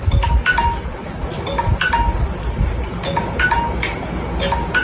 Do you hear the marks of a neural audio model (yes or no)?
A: no